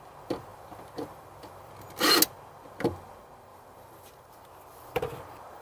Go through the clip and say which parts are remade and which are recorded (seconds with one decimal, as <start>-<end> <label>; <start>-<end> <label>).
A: 0.0-0.5 recorded; 0.5-1.7 remade; 1.7-3.5 recorded; 3.5-5.0 remade; 5.0-5.6 recorded